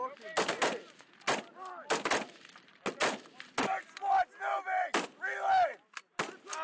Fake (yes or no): no